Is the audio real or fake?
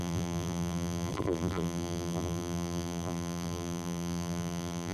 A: fake